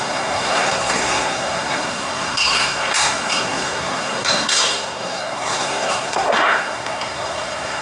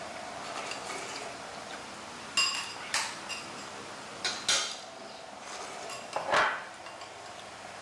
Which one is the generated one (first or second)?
first